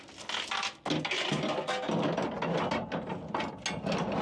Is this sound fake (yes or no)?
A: no